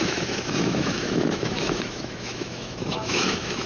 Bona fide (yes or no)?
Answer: no